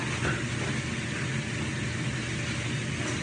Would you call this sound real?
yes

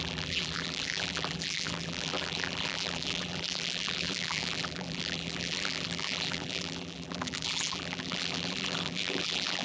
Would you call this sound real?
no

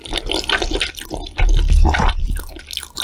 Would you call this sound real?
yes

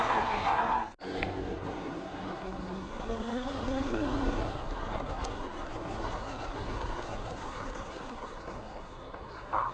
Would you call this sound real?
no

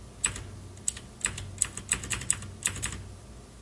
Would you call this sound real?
yes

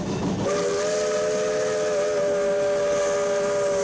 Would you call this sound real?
yes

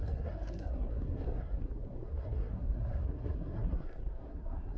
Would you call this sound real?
no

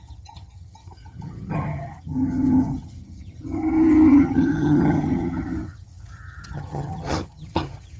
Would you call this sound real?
no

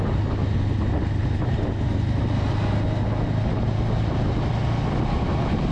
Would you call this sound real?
yes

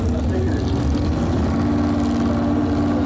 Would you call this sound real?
yes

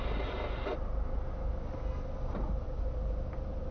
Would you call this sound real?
yes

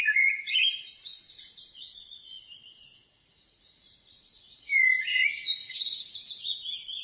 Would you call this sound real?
no